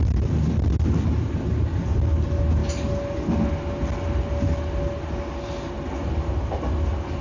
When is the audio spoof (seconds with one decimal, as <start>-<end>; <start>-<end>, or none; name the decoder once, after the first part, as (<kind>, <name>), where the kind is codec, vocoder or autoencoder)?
none

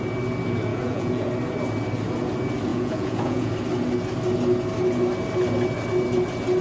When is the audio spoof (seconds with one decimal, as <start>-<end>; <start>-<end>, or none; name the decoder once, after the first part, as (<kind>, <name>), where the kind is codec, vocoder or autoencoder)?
0.7-1.3 (vocoder, Vocos); 2.7-3.5

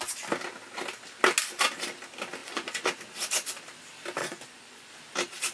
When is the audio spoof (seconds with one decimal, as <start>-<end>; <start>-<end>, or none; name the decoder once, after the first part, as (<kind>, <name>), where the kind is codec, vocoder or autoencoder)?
2.4-2.9 (vocoder, Vocos); 4.2-4.9

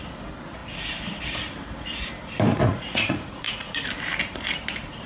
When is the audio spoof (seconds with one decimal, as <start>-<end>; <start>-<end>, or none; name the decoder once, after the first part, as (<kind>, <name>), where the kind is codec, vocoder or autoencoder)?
2.5-3.8 (vocoder, Vocos)